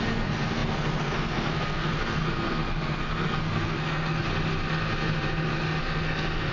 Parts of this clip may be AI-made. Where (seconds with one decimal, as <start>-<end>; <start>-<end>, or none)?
0.0-4.3; 5.8-6.5